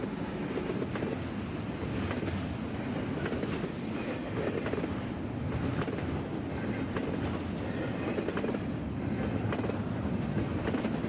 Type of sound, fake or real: real